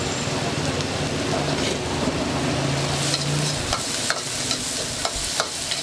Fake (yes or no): no